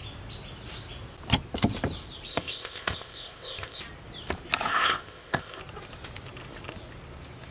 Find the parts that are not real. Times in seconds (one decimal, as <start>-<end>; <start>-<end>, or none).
2.3-3.8; 4.7-5.6